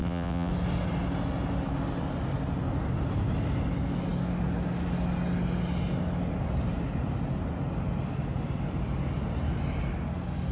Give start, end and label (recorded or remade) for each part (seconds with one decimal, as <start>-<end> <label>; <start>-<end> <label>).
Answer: 0.0-0.5 remade; 0.5-10.5 recorded